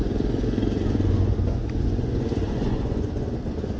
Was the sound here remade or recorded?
remade